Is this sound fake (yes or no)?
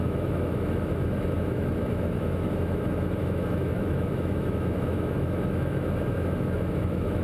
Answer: yes